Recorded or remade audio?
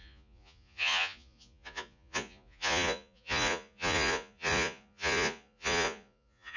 remade